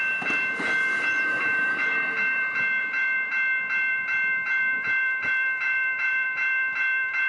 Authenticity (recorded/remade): remade